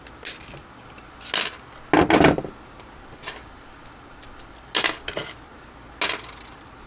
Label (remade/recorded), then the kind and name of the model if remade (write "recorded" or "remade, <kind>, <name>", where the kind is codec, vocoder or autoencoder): recorded